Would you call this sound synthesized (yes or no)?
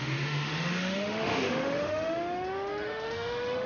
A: yes